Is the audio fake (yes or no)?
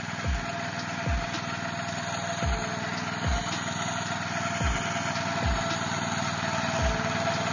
no